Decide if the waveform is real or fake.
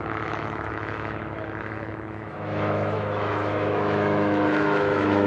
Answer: fake